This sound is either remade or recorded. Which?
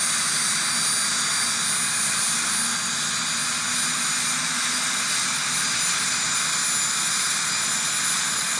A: recorded